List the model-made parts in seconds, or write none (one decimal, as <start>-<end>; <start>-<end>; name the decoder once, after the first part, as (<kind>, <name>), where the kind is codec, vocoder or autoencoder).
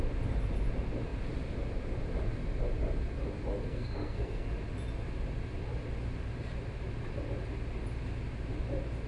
3.5-4.5 (codec, SNAC)